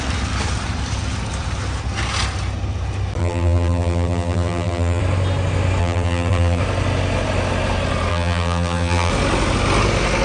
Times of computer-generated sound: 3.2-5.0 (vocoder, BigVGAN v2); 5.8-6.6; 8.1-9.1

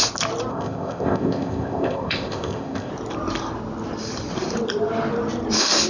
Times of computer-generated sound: 0.5-2.9 (codec, ZipCodec)

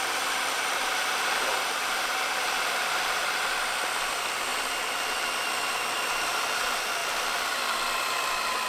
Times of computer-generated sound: 0.0-3.2 (vocoder, BigVGAN v2); 4.1-8.7

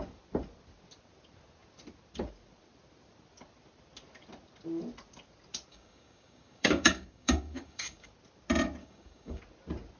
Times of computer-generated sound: 5.7-8.1 (codec, DAC); 8.8-9.4